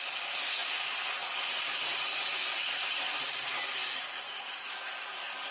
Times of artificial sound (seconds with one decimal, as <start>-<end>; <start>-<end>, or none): none